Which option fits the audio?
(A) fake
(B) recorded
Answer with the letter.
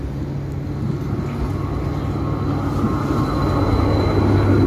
B